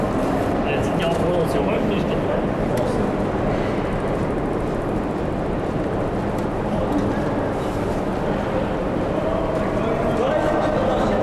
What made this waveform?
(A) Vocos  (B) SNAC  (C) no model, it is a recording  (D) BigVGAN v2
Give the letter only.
C